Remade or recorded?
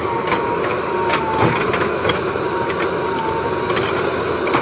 recorded